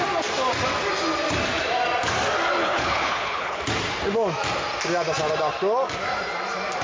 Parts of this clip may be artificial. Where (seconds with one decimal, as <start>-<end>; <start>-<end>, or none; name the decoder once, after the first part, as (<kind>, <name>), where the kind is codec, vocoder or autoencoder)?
2.6-3.6 (codec, HILCodec)